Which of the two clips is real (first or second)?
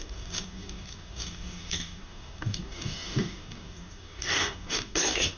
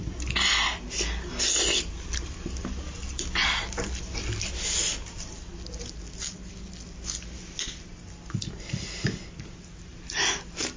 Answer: second